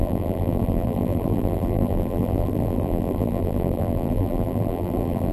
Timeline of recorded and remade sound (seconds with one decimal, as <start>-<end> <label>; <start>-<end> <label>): 0.0-5.3 remade